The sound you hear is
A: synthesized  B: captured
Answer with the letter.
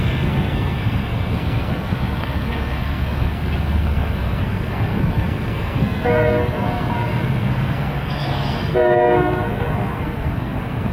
A